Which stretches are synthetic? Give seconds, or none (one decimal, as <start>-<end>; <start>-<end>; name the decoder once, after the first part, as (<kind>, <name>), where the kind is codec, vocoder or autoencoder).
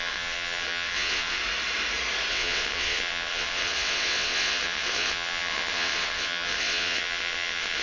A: 0.0-1.4 (vocoder, WaveNeXt); 2.3-7.8